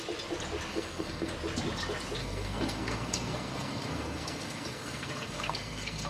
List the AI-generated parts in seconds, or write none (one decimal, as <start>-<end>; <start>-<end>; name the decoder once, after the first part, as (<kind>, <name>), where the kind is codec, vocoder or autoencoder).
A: 0.7-1.3 (codec, SNAC); 2.2-6.1